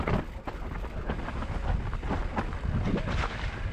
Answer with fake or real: real